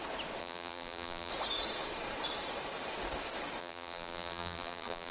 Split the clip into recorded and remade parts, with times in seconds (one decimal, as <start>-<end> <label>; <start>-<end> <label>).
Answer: 0.0-0.4 recorded; 0.4-1.3 remade; 1.3-3.6 recorded; 3.6-5.1 remade